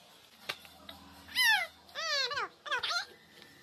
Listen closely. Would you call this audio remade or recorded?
recorded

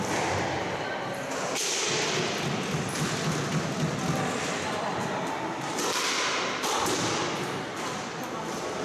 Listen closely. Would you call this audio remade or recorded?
recorded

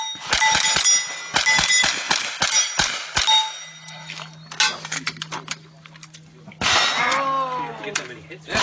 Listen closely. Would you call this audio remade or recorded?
recorded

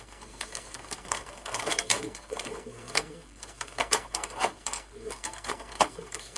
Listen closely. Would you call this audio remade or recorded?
remade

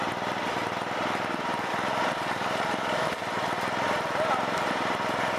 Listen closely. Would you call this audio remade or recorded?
recorded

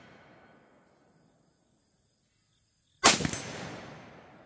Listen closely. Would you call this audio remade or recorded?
recorded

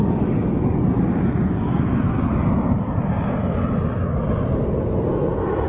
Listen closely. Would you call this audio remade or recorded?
recorded